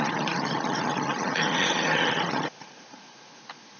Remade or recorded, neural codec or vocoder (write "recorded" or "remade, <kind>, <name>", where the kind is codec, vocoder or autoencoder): remade, vocoder, Vocos